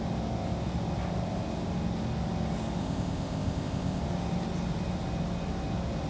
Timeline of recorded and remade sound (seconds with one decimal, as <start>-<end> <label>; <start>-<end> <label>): 0.0-2.8 recorded; 2.8-4.0 remade; 4.0-6.1 recorded